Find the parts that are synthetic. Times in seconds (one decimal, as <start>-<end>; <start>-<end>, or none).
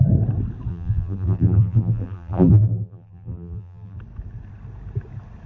0.7-4.0